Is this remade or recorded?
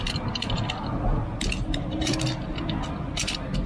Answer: recorded